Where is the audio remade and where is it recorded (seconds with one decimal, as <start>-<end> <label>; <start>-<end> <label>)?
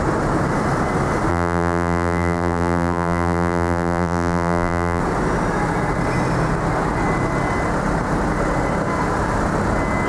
0.0-1.3 recorded; 1.3-5.0 remade; 5.0-10.1 recorded